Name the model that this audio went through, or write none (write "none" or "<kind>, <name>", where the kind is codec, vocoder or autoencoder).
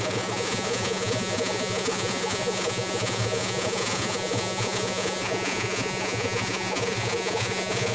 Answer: vocoder, Vocos